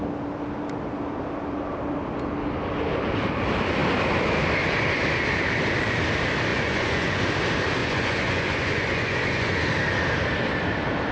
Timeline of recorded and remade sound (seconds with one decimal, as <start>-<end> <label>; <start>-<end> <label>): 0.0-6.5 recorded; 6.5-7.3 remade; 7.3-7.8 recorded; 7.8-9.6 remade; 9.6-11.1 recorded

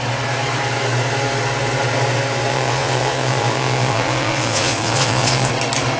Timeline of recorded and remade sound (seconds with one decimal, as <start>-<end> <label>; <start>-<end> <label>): 0.0-2.5 recorded; 2.5-5.5 remade; 5.5-6.0 recorded

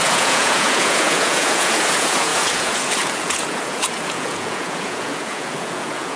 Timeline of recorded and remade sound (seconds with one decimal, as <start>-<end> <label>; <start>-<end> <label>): 0.0-6.2 remade

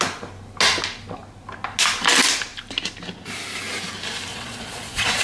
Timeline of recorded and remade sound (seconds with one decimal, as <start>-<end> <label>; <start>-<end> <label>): 0.0-4.3 recorded; 4.3-5.2 remade

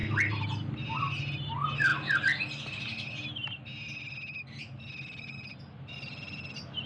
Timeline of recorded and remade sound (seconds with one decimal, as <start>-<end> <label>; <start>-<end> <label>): 0.0-6.9 recorded

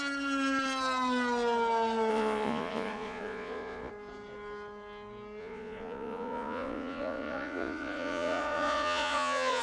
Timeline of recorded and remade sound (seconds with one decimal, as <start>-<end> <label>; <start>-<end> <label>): 0.0-2.1 recorded; 2.1-3.9 remade; 3.9-5.4 recorded; 5.4-9.6 remade

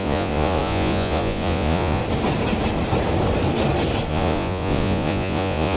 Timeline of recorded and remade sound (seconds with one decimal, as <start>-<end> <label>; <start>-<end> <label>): 0.0-2.0 remade; 2.0-4.1 recorded; 4.1-5.8 remade

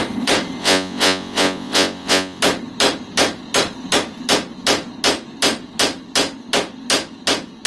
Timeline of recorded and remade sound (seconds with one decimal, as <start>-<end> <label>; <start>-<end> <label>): 0.0-0.6 recorded; 0.6-2.4 remade; 2.4-7.7 recorded